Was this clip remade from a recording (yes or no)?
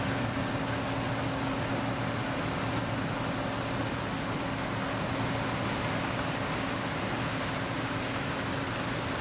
no